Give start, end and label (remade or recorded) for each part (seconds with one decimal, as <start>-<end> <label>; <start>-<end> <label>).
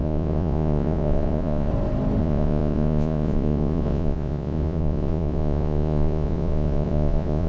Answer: 0.0-1.7 remade; 1.7-2.2 recorded; 2.2-7.5 remade